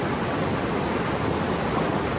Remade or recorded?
recorded